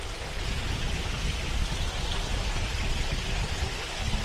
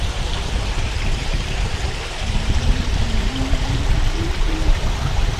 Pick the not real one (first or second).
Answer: second